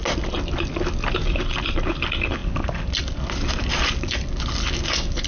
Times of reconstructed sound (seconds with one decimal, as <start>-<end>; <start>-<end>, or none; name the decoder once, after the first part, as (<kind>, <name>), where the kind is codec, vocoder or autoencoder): none